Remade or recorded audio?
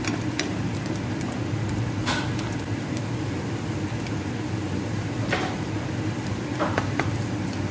recorded